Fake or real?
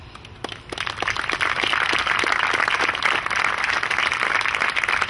real